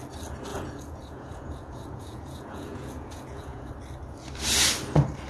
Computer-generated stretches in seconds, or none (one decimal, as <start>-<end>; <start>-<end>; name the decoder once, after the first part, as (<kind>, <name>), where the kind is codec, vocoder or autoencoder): 0.5-3.7 (vocoder, Vocos)